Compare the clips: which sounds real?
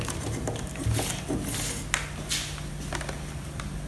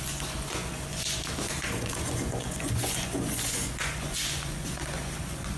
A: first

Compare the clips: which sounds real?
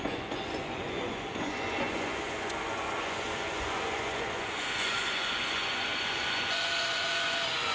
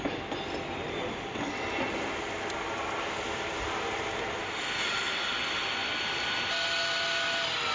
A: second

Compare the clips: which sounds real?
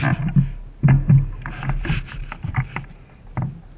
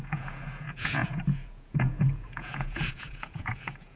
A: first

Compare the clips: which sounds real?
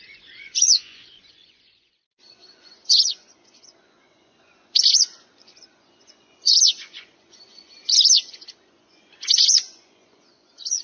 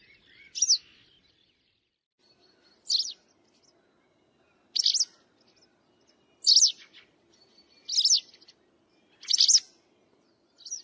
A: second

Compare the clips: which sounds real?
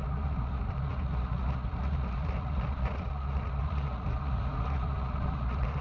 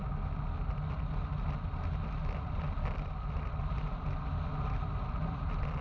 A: second